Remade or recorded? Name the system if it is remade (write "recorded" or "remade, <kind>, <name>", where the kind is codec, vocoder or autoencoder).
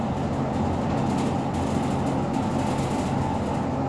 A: recorded